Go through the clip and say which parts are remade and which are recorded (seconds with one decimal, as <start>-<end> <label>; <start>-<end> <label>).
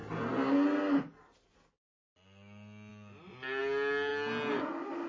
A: 0.0-5.1 recorded